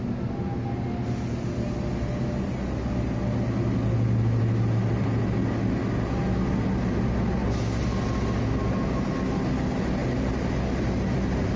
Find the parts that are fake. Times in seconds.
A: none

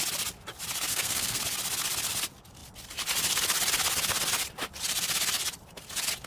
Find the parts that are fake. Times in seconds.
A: 0.9-1.4

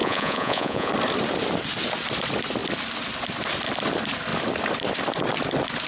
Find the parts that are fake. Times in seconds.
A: 0.0-0.9

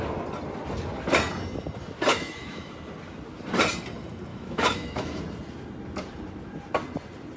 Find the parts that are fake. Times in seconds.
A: 2.1-2.7; 4.3-5.2